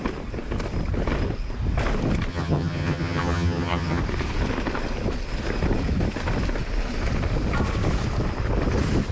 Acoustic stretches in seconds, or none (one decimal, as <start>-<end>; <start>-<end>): 0.0-2.3; 4.0-9.1